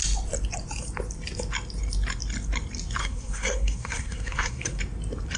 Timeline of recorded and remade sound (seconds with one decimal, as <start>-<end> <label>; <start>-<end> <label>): 0.0-3.0 recorded; 3.0-4.8 remade; 4.8-5.4 recorded